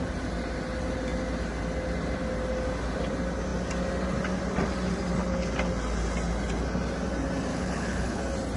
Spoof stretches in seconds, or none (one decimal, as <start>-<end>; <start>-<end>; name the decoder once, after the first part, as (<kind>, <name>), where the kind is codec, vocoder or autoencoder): 7.5-8.2 (codec, HILCodec)